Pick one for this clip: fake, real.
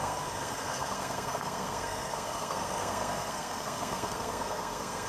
fake